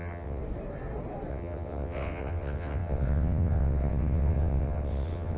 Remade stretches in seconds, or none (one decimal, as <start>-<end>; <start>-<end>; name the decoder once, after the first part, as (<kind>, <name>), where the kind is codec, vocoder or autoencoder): 0.0-0.4 (vocoder, WaveNeXt); 1.3-5.4

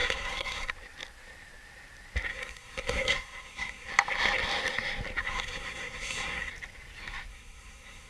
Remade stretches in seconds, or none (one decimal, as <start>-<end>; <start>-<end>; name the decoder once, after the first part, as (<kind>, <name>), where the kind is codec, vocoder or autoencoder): 0.0-0.7 (codec, SNAC); 2.3-3.9; 5.2-6.5; 7.3-8.1

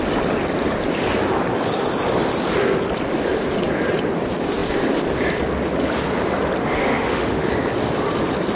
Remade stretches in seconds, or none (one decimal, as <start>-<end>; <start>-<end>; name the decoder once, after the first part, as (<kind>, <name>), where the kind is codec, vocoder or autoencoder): 6.6-7.5 (autoencoder, DAC-VAE)

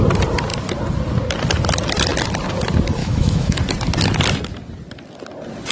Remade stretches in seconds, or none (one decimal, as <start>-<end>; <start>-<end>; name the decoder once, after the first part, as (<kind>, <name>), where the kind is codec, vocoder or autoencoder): 3.0-3.6 (autoencoder, DAC-VAE)

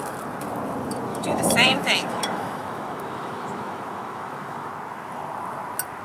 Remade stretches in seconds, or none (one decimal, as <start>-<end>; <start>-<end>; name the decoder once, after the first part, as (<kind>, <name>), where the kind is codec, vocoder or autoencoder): 1.1-4.7 (autoencoder, DAC-VAE)